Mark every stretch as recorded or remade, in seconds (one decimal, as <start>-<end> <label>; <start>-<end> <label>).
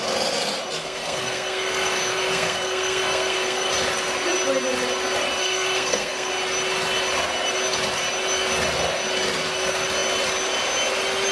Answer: 0.0-0.8 recorded; 0.8-3.7 remade; 3.7-5.4 recorded; 5.4-6.3 remade; 6.3-11.3 recorded